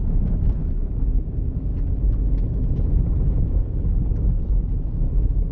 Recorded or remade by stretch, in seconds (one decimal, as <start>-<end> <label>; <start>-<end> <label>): 0.0-0.6 remade; 0.6-1.2 recorded; 1.2-1.7 remade; 1.7-3.4 recorded; 3.4-4.1 remade; 4.1-4.9 recorded; 4.9-5.5 remade